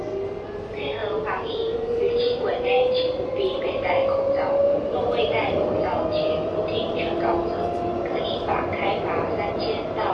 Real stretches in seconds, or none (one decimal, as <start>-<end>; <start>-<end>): 0.0-1.0; 3.7-4.6; 5.8-10.1